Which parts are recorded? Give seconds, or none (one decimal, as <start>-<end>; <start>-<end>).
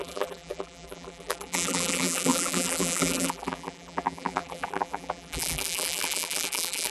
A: none